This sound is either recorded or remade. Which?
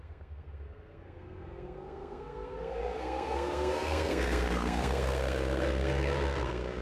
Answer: remade